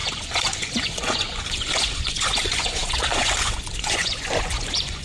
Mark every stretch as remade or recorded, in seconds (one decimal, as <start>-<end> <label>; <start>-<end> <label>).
0.0-5.0 remade